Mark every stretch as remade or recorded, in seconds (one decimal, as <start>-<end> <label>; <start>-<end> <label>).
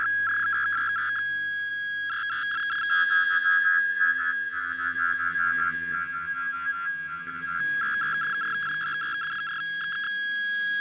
0.0-2.9 recorded; 2.9-7.6 remade; 7.6-10.8 recorded